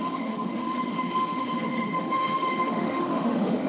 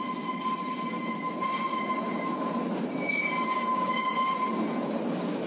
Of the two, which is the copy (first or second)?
first